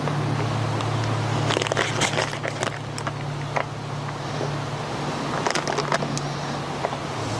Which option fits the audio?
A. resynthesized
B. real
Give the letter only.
B